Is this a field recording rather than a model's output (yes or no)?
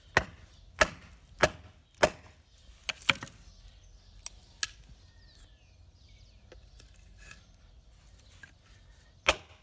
yes